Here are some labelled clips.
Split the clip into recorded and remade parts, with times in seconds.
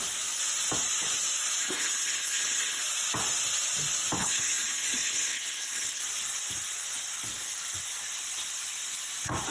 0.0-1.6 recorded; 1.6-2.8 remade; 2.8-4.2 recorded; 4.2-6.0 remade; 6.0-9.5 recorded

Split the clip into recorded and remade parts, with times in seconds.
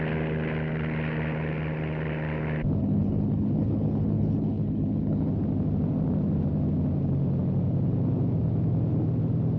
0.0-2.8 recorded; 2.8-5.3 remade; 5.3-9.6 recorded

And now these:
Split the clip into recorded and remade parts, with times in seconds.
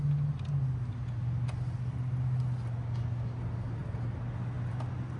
0.0-5.2 recorded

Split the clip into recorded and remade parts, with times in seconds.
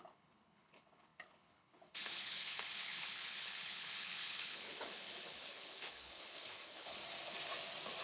0.0-7.0 remade; 7.0-8.0 recorded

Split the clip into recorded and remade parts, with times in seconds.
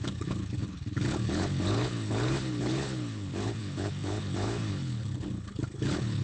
0.0-6.2 remade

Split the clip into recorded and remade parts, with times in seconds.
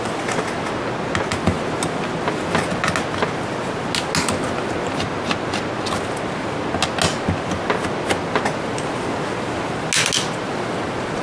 0.0-11.2 recorded